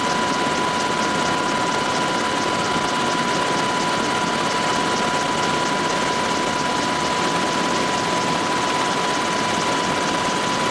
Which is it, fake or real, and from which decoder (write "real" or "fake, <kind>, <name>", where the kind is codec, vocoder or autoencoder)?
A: real